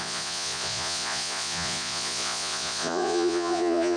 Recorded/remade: remade